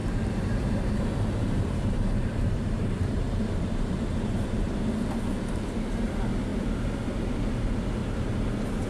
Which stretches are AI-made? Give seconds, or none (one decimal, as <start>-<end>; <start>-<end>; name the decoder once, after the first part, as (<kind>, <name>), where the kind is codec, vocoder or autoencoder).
0.0-4.7 (vocoder, BigVGAN v2); 8.0-8.5